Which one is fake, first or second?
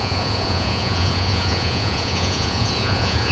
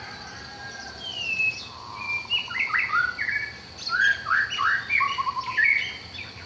first